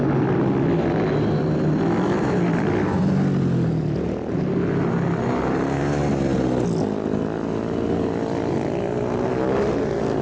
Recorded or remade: recorded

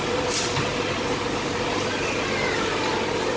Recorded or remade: recorded